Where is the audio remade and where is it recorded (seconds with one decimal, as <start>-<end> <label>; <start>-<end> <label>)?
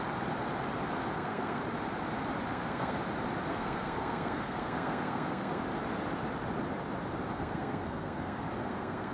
0.0-1.1 recorded; 1.1-1.6 remade; 1.6-2.5 recorded; 2.5-3.0 remade; 3.0-3.5 recorded; 3.5-5.6 remade; 5.6-7.3 recorded; 7.3-9.1 remade